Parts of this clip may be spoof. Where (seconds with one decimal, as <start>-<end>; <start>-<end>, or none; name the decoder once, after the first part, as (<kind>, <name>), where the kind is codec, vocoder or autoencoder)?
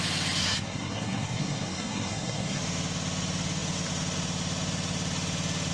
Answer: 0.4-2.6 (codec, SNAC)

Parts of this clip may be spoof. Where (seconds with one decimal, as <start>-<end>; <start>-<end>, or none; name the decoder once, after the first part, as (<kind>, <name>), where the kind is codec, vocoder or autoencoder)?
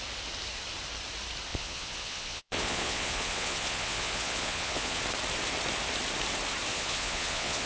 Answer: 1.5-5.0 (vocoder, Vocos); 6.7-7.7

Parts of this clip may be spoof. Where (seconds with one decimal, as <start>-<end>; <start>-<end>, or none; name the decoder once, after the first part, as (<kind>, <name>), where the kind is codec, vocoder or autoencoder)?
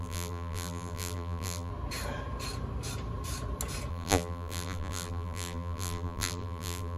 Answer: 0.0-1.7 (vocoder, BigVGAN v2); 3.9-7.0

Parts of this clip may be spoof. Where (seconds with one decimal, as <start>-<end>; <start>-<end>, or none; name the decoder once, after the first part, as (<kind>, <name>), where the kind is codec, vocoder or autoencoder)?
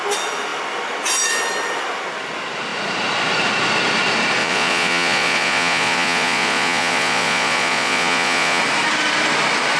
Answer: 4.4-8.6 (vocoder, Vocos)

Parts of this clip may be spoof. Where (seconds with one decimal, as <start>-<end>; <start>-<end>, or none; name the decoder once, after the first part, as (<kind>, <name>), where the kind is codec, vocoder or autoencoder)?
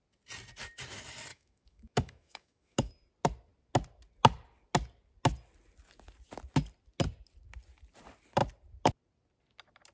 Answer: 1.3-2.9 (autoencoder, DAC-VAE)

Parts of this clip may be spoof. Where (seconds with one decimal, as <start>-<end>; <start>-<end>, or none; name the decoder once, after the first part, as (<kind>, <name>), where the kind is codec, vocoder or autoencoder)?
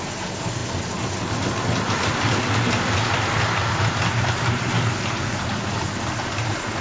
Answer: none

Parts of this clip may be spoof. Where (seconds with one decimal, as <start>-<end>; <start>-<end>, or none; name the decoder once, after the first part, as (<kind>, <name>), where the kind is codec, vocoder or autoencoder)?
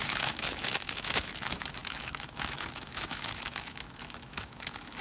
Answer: 0.0-5.0 (autoencoder, DAC-VAE)